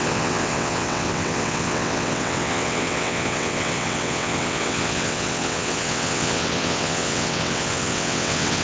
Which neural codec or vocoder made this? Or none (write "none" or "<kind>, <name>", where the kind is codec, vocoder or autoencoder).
vocoder, WaveNeXt